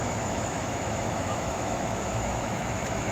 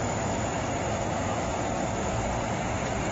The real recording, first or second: second